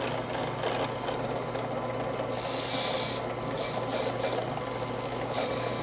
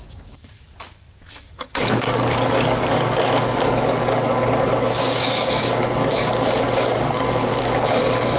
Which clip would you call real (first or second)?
first